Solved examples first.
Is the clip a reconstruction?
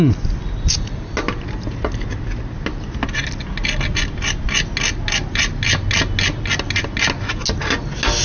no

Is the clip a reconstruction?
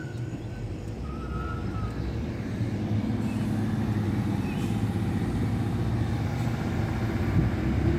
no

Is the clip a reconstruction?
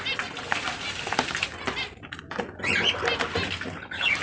no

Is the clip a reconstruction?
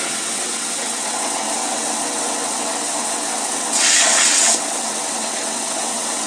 yes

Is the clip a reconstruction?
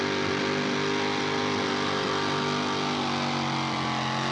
no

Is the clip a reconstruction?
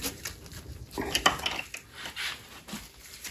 no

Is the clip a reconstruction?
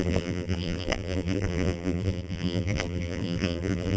yes